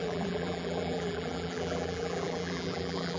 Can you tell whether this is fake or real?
fake